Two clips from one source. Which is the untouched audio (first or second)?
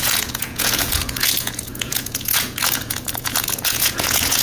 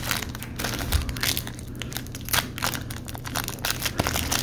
second